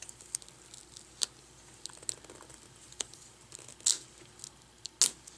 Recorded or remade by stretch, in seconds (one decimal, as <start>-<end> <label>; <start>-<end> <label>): 0.0-5.4 recorded